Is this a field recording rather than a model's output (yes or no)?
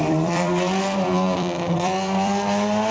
no